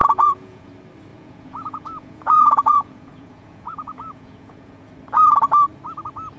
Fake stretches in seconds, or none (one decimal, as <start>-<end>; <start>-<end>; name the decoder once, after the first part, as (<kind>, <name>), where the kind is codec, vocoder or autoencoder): 0.0-0.7 (vocoder, Vocos); 1.1-4.9